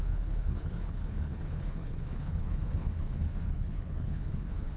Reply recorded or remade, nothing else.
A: remade